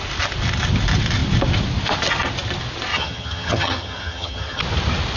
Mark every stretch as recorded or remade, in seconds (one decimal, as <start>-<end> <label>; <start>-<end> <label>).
0.0-2.9 recorded; 2.9-4.6 remade; 4.6-5.2 recorded